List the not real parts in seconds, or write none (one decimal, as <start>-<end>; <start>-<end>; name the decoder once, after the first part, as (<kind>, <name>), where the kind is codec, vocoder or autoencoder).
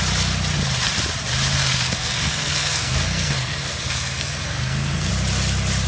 1.6-5.1 (codec, SNAC)